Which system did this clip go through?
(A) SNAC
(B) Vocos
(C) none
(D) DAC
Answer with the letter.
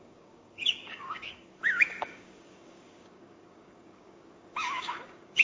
D